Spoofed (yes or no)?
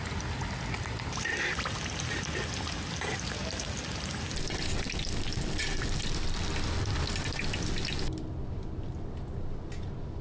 no